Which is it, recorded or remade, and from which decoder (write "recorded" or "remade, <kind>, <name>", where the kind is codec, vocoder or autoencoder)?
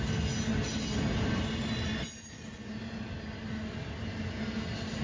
recorded